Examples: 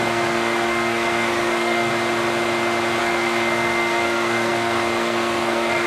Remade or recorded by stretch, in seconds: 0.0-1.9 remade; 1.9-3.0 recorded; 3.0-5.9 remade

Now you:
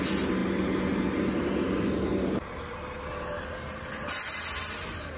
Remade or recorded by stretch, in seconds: 0.0-5.2 recorded

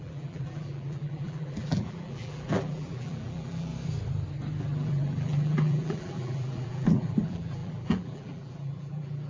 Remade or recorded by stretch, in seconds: 0.0-3.7 remade; 3.7-4.6 recorded; 4.6-9.3 remade

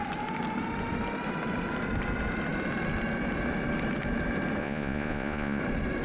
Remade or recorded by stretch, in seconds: 0.0-4.6 recorded; 4.6-5.6 remade; 5.6-6.0 recorded

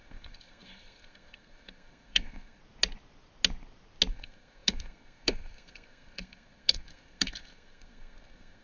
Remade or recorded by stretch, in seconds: 0.0-2.6 remade; 2.6-4.1 recorded; 4.1-8.6 remade

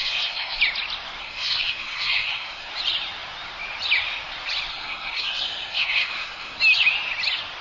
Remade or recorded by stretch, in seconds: 0.0-0.6 remade; 0.6-1.2 recorded; 1.2-2.7 remade; 2.7-4.7 recorded; 4.7-6.6 remade; 6.6-7.6 recorded

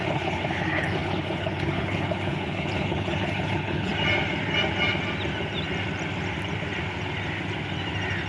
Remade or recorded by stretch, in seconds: 0.0-3.9 remade; 3.9-8.3 recorded